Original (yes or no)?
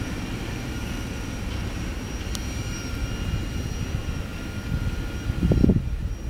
yes